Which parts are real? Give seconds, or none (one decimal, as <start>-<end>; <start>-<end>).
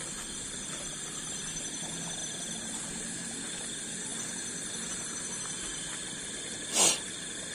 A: 0.0-7.5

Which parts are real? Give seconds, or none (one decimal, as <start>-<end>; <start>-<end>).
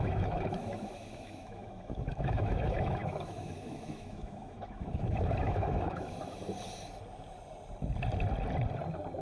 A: 6.4-9.2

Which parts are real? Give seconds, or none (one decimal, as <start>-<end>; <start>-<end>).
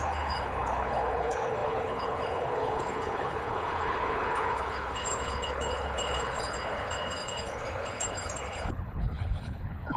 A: none